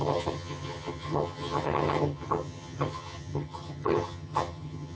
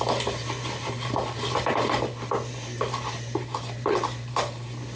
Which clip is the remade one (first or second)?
first